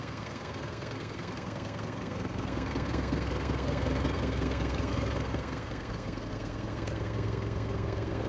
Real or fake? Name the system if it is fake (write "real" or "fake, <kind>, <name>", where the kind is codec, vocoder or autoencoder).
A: fake, codec, SNAC